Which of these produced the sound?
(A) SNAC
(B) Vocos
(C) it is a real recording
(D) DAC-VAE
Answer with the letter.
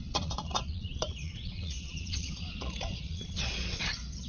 B